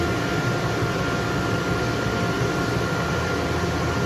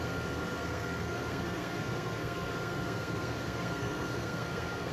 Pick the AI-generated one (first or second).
second